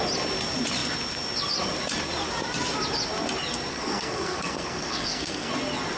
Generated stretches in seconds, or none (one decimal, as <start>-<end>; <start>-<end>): 3.7-5.5